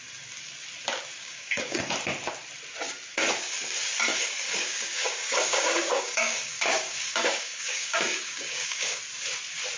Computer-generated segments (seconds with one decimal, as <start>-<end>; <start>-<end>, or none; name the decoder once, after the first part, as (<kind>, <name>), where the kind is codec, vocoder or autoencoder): 1.2-1.8 (codec, DAC); 4.1-9.0